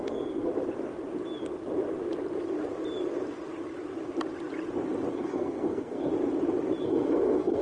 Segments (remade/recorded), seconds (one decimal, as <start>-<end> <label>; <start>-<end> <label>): 0.0-0.5 remade; 0.5-5.1 recorded; 5.1-6.1 remade; 6.1-6.8 recorded; 6.8-7.6 remade